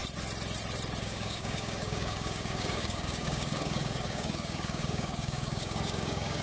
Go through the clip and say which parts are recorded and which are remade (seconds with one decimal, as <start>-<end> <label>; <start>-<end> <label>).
0.0-1.0 recorded; 1.0-6.4 remade